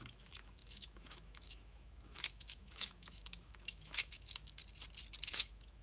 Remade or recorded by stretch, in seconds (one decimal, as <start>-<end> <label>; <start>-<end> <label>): 0.0-4.6 remade; 4.6-5.3 recorded; 5.3-5.8 remade